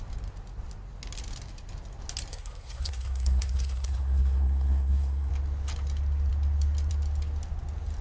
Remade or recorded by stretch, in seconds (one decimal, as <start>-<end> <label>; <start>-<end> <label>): 0.0-2.3 recorded; 2.3-5.3 remade; 5.3-8.0 recorded